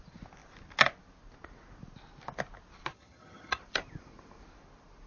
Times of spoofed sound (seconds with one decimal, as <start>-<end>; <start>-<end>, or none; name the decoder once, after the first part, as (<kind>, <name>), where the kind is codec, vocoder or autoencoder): 2.9-3.6 (vocoder, HiFi-GAN)